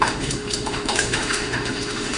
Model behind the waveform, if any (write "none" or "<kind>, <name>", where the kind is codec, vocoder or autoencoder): autoencoder, DAC-VAE